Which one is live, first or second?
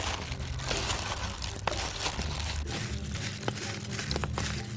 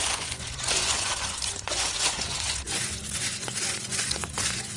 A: first